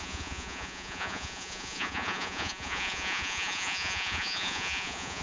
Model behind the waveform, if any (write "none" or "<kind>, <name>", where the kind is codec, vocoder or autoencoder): vocoder, Vocos